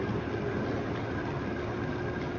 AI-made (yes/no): no